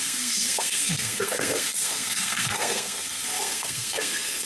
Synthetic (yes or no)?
yes